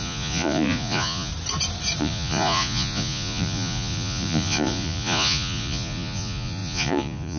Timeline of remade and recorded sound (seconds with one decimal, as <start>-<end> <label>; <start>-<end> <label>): 0.0-1.3 remade; 1.3-2.0 recorded; 2.0-7.4 remade